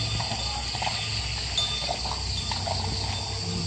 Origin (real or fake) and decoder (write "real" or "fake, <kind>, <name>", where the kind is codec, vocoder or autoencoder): real